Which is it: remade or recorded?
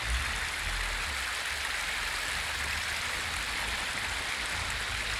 recorded